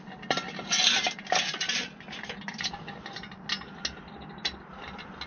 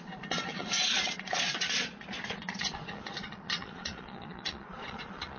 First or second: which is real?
first